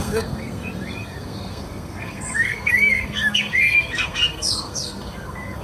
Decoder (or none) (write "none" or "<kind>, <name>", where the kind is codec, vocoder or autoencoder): codec, SNAC